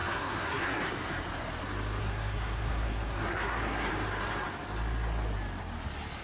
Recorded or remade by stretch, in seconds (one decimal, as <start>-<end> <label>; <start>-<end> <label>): 0.0-0.8 remade; 0.8-2.0 recorded; 2.0-3.9 remade; 3.9-6.2 recorded